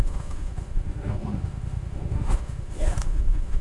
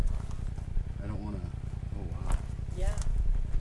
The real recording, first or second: second